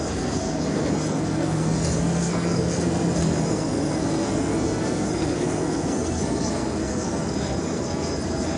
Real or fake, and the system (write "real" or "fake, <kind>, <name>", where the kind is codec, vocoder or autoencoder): fake, codec, SNAC